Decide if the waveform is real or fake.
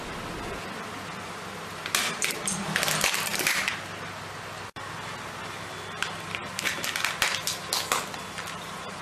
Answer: real